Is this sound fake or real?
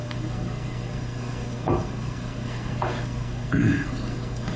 fake